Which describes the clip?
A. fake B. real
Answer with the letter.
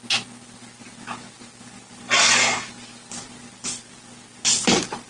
B